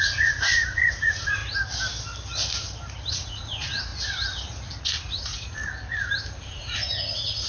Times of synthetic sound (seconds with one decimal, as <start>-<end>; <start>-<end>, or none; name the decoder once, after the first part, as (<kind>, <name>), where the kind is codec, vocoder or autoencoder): 0.0-1.4 (vocoder, Vocos); 3.1-3.9; 4.8-5.6; 6.4-7.5